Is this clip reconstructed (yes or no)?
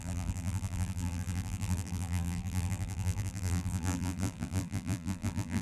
yes